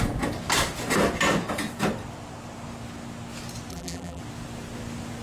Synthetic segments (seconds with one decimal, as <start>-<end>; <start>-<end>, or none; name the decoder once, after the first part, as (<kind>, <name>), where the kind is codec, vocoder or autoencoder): 3.7-4.2 (vocoder, BigVGAN v2)